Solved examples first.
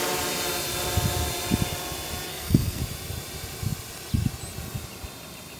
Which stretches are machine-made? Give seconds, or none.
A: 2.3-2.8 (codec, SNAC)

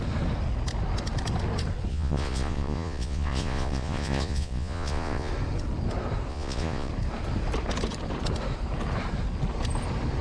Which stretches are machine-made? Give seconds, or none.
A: 1.9-5.3 (vocoder, Vocos); 6.3-6.9

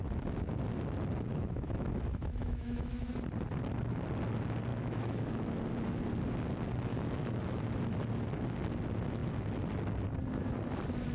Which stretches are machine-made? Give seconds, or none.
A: 1.3-3.1 (autoencoder, DAC-VAE); 4.7-5.6; 6.9-7.6

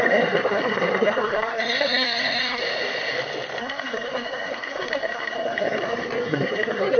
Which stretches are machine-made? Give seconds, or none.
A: 0.0-2.6 (codec, SNAC); 3.6-7.0